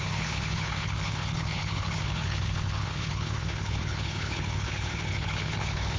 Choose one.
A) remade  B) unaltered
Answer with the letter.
A